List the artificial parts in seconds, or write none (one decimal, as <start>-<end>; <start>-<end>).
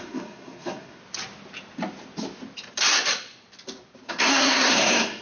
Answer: 0.0-1.0; 4.1-5.2